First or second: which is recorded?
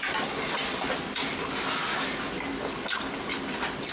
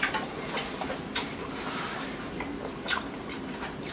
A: first